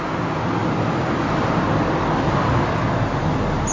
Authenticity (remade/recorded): recorded